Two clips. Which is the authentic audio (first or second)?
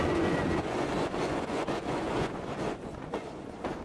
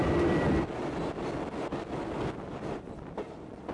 second